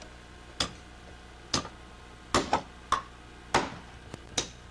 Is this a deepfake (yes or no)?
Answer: no